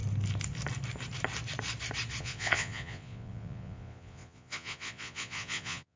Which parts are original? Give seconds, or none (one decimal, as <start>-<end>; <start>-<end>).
0.0-2.2